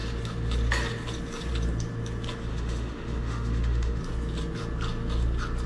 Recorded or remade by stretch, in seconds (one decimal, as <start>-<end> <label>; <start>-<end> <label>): 0.0-2.5 recorded; 2.5-4.0 remade; 4.0-5.7 recorded